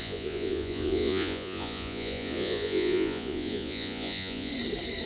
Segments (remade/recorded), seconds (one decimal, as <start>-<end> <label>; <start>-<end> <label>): 0.0-4.5 remade; 4.5-5.1 recorded